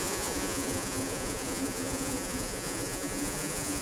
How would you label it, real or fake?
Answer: fake